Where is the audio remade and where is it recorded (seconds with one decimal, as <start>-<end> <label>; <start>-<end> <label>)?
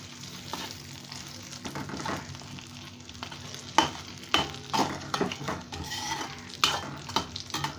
0.0-4.8 recorded; 4.8-6.2 remade; 6.2-7.8 recorded